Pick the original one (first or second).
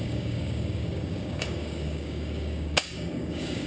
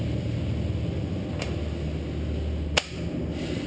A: second